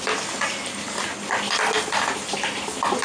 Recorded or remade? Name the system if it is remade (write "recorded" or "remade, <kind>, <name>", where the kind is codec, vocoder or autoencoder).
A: recorded